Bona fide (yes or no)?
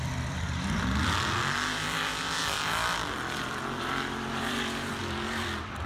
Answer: no